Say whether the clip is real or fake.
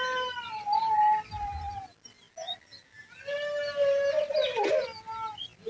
real